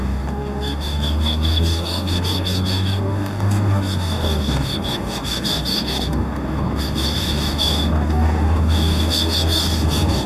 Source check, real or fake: fake